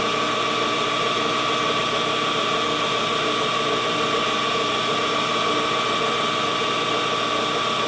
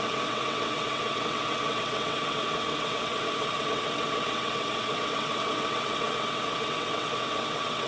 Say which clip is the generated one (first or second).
second